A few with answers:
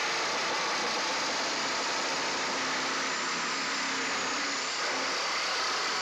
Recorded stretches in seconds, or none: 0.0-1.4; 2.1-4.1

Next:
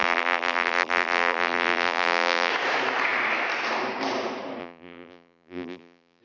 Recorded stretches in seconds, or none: 2.5-4.6

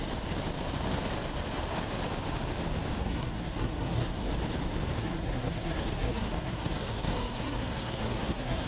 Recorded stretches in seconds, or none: 0.0-3.0; 4.3-5.0

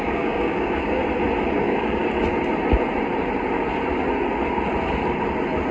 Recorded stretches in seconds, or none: 1.0-1.5; 2.0-5.7